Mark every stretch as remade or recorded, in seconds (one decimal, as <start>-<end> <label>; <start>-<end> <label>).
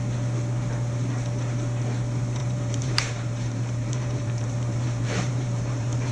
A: 0.0-2.4 recorded; 2.4-6.1 remade